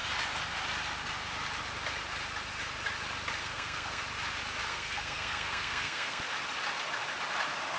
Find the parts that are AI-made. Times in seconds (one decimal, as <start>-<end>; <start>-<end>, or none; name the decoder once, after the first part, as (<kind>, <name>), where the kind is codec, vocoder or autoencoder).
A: 3.4-4.0 (codec, SNAC); 4.7-6.2